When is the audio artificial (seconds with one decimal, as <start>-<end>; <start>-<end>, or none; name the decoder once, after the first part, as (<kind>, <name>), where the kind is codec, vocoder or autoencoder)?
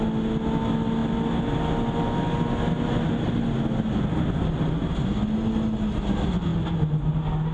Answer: none